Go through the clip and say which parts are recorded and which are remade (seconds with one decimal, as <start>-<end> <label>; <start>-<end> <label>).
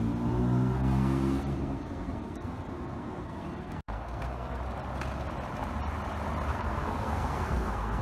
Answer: 0.0-0.4 recorded; 0.4-4.6 remade; 4.6-6.5 recorded; 6.5-8.0 remade